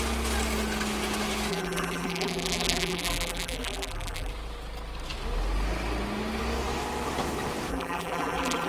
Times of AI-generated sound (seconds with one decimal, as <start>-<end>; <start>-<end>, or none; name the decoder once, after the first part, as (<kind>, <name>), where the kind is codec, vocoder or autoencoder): 1.5-4.3 (vocoder, BigVGAN v2); 7.7-8.7